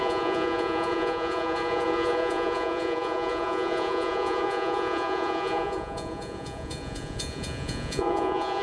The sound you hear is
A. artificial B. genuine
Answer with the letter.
A